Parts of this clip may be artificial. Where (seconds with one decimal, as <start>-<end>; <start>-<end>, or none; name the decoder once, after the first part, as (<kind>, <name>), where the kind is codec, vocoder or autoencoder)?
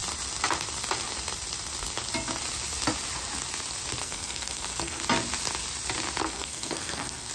4.0-5.0 (codec, SNAC); 6.2-7.3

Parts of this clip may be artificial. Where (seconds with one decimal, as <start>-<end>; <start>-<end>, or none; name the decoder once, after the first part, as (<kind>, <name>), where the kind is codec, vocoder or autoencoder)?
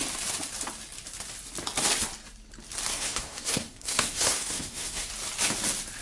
2.9-5.1 (codec, SNAC)